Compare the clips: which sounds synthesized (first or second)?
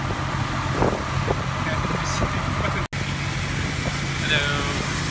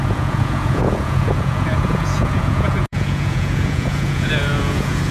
second